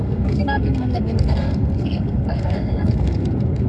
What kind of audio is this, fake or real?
fake